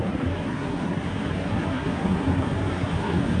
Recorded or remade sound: remade